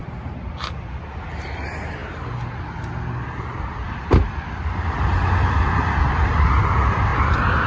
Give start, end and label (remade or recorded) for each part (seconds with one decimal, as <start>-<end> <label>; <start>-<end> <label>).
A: 0.0-7.7 recorded